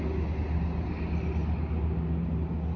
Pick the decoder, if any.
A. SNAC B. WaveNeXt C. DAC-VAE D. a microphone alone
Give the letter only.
D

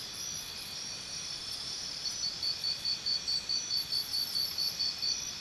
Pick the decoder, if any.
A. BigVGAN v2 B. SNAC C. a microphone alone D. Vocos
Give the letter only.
C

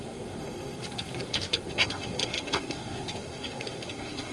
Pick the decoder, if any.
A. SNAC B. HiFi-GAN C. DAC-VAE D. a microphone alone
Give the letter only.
A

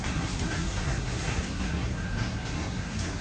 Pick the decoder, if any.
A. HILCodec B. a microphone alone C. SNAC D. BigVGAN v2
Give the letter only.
C